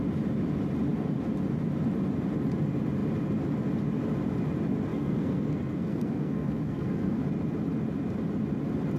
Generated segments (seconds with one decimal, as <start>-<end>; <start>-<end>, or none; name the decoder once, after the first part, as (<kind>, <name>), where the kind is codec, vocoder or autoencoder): 4.9-7.2 (codec, SNAC)